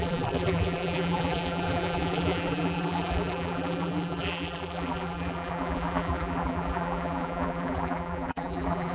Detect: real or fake fake